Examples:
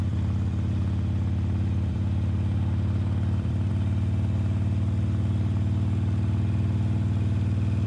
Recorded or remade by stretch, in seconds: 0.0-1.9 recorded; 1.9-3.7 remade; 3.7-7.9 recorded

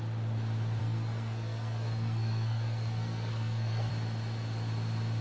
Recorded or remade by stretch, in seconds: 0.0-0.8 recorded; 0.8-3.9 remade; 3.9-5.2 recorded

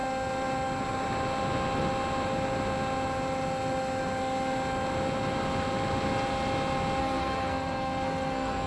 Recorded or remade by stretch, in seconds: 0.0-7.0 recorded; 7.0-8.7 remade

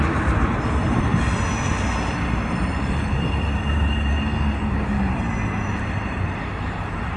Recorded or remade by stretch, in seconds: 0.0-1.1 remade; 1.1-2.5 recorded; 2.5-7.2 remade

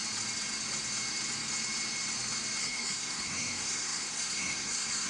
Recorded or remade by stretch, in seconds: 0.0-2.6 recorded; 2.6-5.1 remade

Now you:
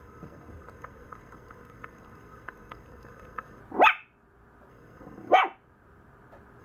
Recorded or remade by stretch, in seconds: 0.0-3.6 remade; 3.6-4.7 recorded; 4.7-5.4 remade; 5.4-6.6 recorded